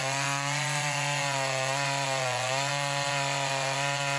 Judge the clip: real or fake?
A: fake